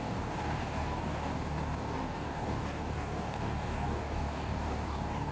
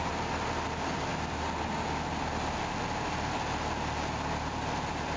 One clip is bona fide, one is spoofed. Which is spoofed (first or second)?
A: first